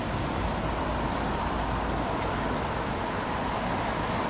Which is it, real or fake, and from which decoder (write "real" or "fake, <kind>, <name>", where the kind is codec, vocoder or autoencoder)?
fake, vocoder, BigVGAN v2